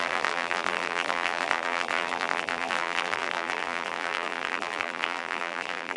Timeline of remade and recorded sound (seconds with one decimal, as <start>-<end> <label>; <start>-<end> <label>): 0.0-6.0 remade